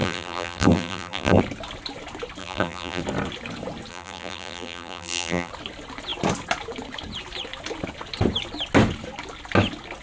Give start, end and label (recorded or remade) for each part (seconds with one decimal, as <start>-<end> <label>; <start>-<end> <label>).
0.0-1.4 remade; 1.4-2.4 recorded; 2.4-3.0 remade; 3.0-3.9 recorded; 3.9-5.5 remade; 5.5-10.0 recorded